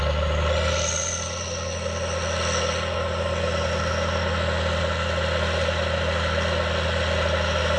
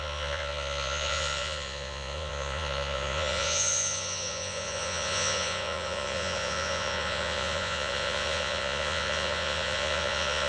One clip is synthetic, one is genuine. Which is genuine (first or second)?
first